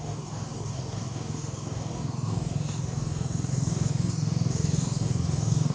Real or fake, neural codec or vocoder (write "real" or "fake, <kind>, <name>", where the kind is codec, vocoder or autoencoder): fake, codec, DAC